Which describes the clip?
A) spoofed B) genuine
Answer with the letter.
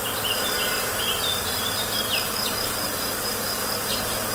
B